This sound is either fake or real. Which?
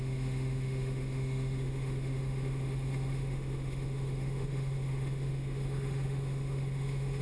fake